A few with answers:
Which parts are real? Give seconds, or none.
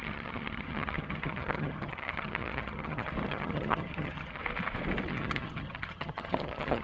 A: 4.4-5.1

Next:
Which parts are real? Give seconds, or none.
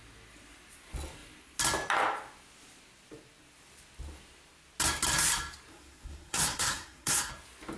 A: 0.0-5.7; 7.3-7.8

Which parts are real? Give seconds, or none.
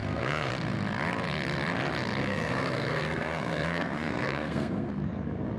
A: 0.5-2.2; 4.9-5.6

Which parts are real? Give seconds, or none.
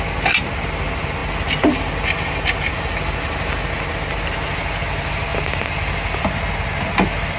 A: 0.0-5.3; 6.2-7.4